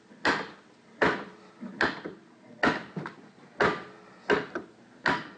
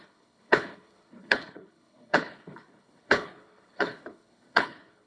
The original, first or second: first